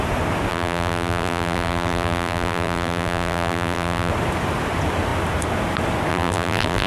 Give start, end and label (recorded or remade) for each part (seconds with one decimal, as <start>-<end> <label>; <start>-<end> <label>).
0.0-0.5 recorded; 0.5-4.1 remade; 4.1-6.1 recorded; 6.1-6.9 remade